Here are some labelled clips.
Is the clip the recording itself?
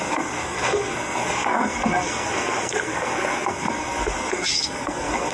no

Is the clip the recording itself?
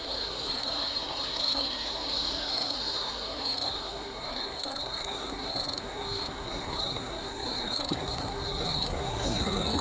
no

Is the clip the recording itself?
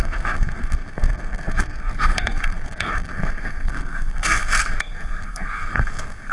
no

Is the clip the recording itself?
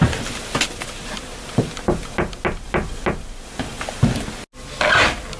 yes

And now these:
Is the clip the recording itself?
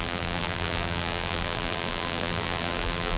no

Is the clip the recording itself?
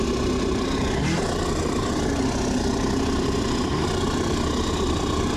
no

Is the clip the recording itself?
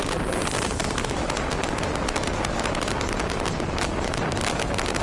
yes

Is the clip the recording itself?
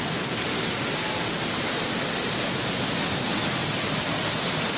yes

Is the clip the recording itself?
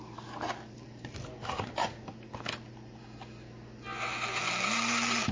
yes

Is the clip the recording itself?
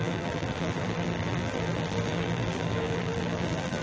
no